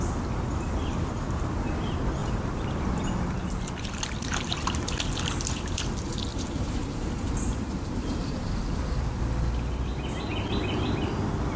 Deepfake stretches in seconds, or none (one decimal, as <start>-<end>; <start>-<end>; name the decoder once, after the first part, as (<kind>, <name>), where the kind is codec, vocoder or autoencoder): 6.3-9.2 (vocoder, BigVGAN v2)